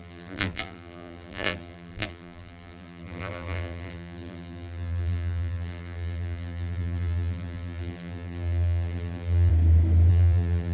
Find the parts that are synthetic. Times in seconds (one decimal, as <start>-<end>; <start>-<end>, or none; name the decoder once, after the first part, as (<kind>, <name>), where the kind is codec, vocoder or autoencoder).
0.0-9.5 (vocoder, BigVGAN v2); 10.1-10.7